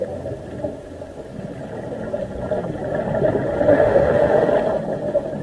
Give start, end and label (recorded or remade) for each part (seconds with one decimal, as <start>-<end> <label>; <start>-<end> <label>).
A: 0.0-3.7 recorded; 3.7-4.5 remade; 4.5-5.4 recorded